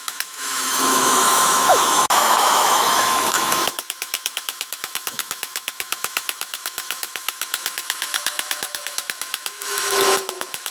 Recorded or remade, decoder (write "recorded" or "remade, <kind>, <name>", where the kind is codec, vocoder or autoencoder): remade, autoencoder, DAC-VAE